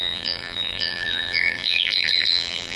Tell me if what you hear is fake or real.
fake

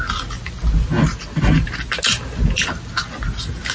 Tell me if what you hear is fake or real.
real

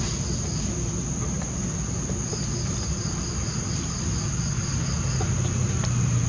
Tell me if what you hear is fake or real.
real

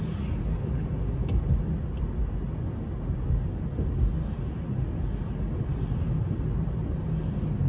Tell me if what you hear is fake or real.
real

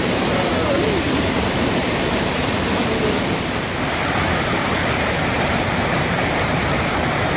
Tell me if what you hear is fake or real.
fake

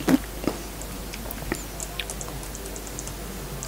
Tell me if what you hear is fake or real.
real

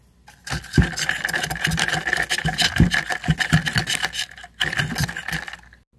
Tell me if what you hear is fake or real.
real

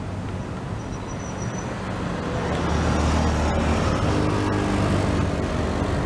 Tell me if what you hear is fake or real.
real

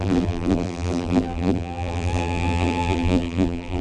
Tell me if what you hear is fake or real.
fake